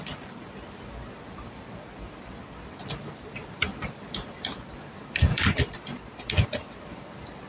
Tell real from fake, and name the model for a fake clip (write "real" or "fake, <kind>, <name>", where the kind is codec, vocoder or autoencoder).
real